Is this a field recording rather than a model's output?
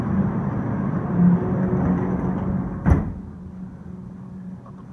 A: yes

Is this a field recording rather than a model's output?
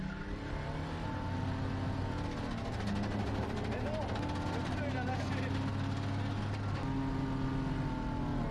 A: yes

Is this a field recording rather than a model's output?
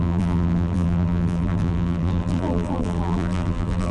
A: no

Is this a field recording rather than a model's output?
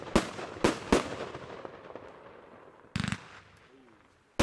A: yes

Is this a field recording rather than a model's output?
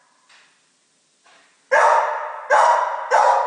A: yes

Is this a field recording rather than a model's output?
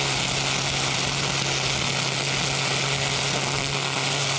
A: yes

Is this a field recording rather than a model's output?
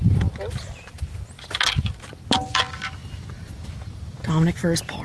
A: yes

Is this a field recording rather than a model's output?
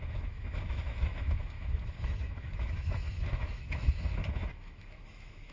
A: no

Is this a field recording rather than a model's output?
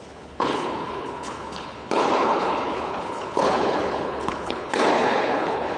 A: no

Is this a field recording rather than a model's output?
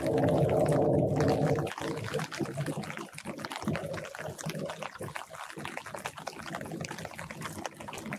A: yes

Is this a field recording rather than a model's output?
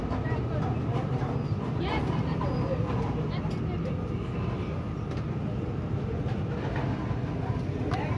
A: yes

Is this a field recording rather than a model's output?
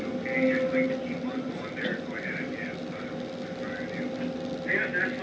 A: yes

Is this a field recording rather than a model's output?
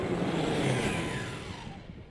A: yes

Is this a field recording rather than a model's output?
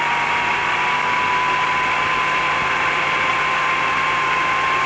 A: yes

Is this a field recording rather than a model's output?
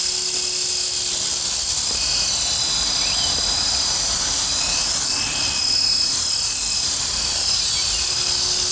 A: yes